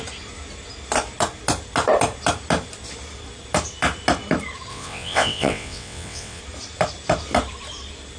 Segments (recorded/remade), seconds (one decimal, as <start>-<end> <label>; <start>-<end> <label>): 0.0-4.7 recorded; 4.7-6.4 remade; 6.4-8.2 recorded